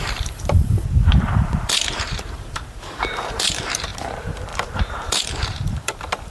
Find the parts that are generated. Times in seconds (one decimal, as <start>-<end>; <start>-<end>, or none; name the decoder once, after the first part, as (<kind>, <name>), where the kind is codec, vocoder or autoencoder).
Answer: 0.0-6.3 (vocoder, BigVGAN v2)